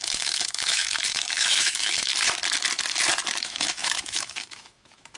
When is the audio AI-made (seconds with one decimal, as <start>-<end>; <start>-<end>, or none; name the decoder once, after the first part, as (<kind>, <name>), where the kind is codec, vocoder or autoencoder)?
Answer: 0.0-2.1 (autoencoder, DAC-VAE); 3.4-5.2